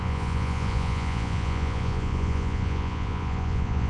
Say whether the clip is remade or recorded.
remade